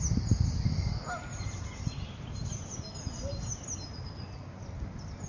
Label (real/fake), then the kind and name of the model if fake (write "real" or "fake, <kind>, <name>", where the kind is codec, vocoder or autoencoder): real